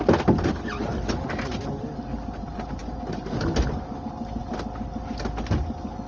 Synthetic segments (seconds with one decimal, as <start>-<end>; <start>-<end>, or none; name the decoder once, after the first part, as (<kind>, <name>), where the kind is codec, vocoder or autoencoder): none